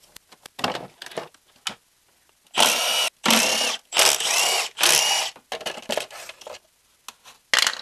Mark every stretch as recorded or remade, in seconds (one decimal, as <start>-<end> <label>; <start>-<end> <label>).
0.0-7.8 recorded